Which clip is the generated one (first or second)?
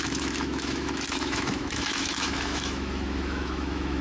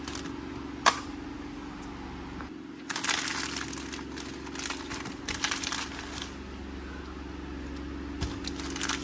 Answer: first